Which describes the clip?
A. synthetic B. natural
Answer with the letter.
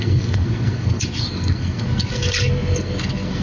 A